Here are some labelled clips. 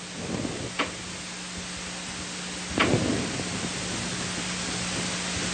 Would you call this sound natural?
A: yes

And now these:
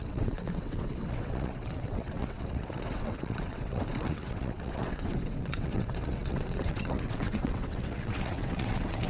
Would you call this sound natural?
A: no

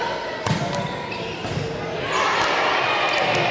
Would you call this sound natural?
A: yes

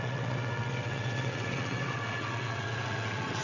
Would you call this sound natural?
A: no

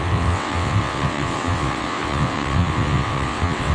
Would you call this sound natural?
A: no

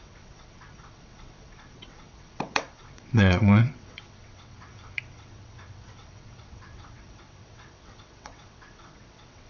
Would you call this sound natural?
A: no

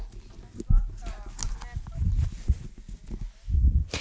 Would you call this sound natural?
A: yes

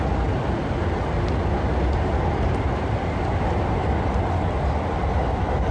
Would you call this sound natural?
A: yes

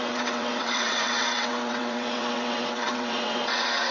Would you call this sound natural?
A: no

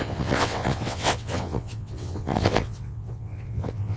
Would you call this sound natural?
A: no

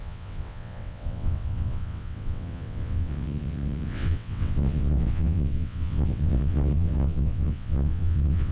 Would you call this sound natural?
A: no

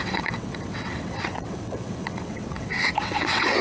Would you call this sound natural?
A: no